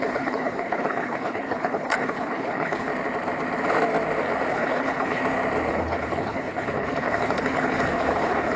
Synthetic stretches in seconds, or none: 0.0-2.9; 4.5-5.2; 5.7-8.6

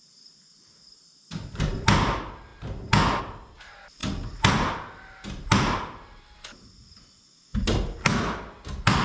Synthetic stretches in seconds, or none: none

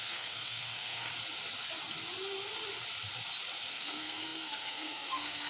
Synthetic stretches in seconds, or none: 0.0-1.1; 3.7-5.5